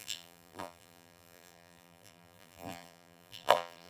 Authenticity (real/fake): fake